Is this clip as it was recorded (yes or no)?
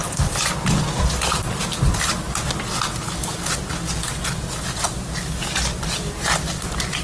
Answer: yes